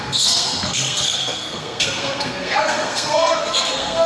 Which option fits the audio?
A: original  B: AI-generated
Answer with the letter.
B